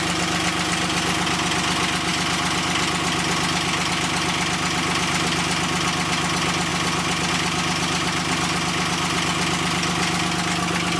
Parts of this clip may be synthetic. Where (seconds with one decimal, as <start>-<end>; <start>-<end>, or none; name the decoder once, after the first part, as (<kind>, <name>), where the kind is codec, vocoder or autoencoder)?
none